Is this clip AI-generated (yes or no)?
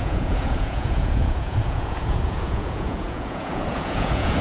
yes